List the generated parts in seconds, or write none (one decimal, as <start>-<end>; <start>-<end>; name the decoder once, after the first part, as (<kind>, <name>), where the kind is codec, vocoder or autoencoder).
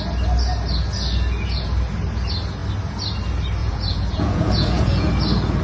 3.6-5.1 (vocoder, Vocos)